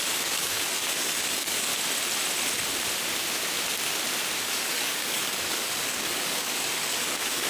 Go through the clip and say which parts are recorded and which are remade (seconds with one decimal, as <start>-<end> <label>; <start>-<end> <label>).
0.0-1.7 remade; 1.7-4.4 recorded; 4.4-7.5 remade